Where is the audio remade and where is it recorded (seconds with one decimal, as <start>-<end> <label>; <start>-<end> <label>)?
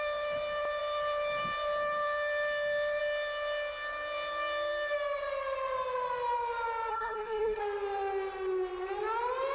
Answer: 0.0-6.9 recorded; 6.9-7.6 remade; 7.6-9.5 recorded